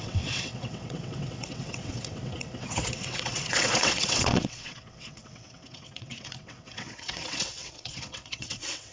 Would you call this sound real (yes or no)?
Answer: no